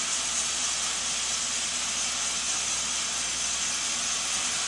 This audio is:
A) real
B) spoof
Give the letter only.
A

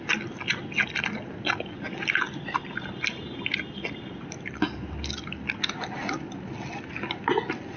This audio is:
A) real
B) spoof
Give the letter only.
A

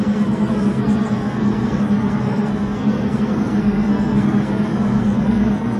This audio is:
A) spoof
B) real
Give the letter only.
A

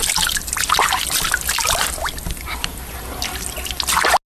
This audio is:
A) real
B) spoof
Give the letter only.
A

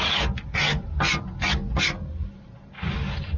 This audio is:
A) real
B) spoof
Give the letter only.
A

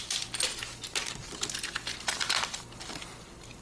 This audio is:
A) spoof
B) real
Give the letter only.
B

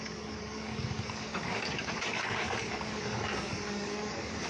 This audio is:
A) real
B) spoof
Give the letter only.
B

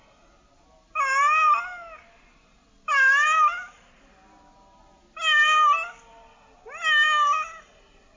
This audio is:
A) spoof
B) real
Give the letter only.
B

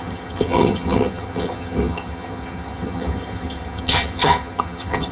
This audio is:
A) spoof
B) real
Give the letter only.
A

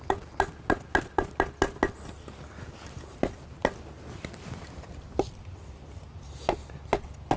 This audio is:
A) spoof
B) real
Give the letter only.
B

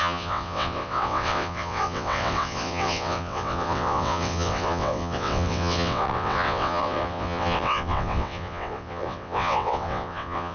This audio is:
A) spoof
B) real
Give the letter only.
A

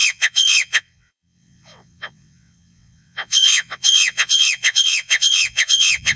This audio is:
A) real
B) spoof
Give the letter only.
B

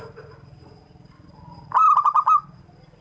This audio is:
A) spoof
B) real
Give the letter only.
B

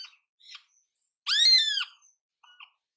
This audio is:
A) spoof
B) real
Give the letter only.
B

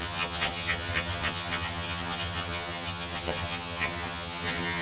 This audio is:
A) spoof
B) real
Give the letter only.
A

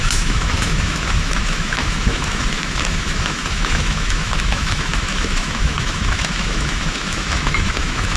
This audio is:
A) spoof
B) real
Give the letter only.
A